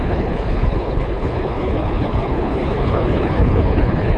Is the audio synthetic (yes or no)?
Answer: yes